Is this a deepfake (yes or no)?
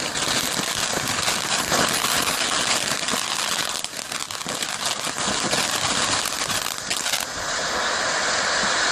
no